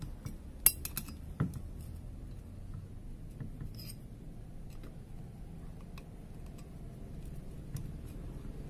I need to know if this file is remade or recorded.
recorded